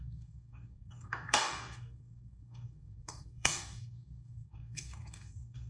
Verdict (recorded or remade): remade